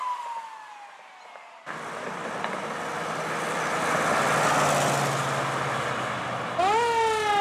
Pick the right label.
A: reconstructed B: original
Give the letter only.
B